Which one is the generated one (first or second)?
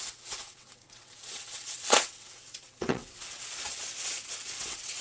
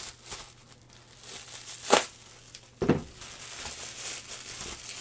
first